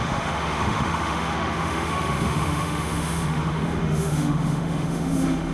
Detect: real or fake fake